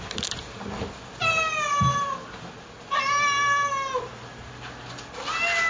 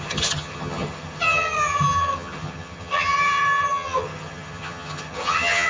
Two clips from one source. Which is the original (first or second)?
first